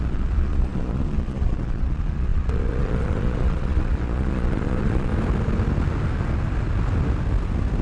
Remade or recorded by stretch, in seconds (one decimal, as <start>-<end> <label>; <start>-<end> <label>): 0.0-5.1 remade; 5.1-7.8 recorded